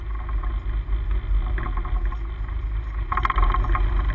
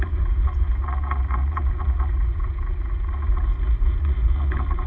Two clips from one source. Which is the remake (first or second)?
second